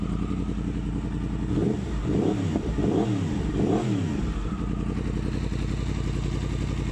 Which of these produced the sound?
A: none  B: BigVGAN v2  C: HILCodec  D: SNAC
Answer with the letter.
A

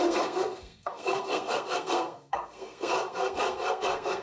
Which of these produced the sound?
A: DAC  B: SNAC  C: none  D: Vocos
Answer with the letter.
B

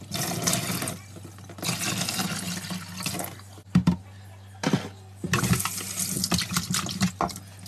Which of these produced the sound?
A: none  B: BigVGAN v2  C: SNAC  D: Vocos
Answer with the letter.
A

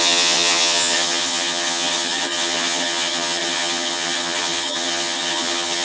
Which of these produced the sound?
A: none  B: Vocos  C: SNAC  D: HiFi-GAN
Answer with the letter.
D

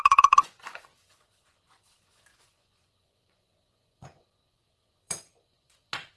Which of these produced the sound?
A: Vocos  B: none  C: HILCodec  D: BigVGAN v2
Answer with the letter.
A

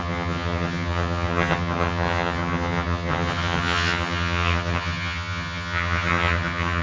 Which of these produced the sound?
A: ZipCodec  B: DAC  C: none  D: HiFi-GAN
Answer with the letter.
D